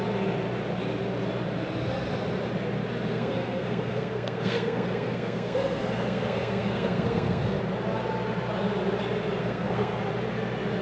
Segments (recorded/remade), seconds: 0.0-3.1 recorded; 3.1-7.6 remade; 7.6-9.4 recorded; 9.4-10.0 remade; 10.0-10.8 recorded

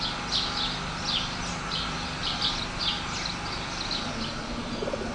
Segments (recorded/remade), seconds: 0.0-5.1 recorded

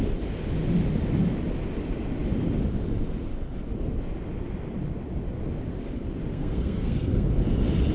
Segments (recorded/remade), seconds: 0.0-6.3 recorded; 6.3-7.3 remade; 7.3-7.9 recorded

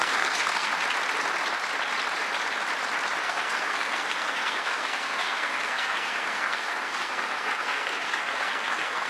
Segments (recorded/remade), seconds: 0.0-0.7 remade; 0.7-3.2 recorded; 3.2-9.1 remade

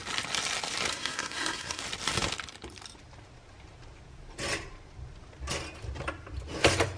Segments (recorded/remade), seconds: 0.0-0.9 recorded; 0.9-1.8 remade; 1.8-7.0 recorded